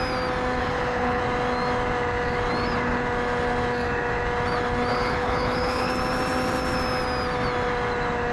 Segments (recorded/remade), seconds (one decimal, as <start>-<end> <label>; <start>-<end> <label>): 0.0-0.6 recorded; 0.6-1.2 remade; 1.2-4.9 recorded; 4.9-5.9 remade; 5.9-8.3 recorded